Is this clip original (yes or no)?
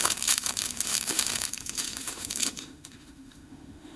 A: no